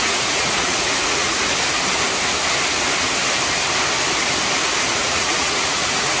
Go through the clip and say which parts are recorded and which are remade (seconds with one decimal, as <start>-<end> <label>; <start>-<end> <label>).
0.0-1.4 remade; 1.4-4.9 recorded; 4.9-6.2 remade